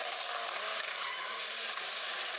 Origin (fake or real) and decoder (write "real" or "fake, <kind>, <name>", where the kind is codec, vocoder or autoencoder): real